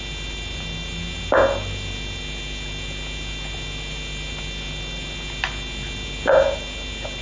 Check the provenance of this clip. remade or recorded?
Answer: recorded